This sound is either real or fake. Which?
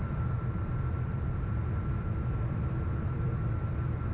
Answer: real